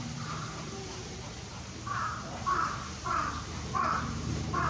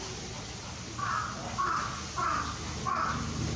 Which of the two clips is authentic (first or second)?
second